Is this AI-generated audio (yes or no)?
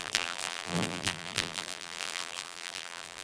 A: yes